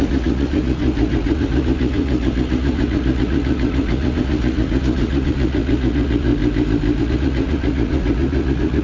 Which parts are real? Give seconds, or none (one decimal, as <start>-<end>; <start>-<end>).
6.3-7.0